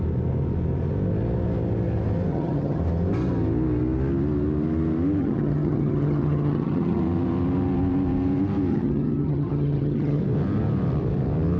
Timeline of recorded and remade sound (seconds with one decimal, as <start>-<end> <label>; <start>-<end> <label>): 0.0-2.3 recorded; 2.3-2.8 remade; 2.8-5.2 recorded; 5.2-7.0 remade; 7.0-8.7 recorded; 8.7-10.2 remade; 10.2-11.6 recorded

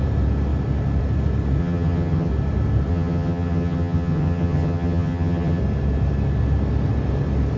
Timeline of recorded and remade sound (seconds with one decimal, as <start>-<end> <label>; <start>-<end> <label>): 0.0-1.6 recorded; 1.6-2.3 remade; 2.3-2.9 recorded; 2.9-5.6 remade; 5.6-7.6 recorded

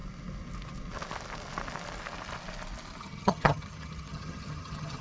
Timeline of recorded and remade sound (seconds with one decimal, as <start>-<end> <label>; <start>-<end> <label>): 0.0-3.0 recorded; 3.0-5.0 remade

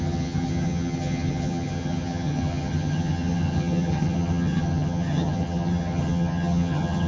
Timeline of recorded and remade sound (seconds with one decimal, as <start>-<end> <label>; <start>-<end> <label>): 0.0-7.1 remade

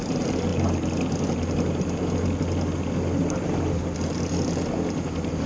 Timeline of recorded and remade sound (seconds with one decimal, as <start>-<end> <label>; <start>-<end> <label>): 0.0-5.5 recorded

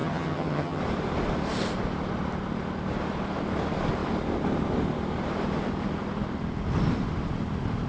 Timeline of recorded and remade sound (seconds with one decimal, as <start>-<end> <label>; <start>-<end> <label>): 0.0-0.8 remade; 0.8-7.9 recorded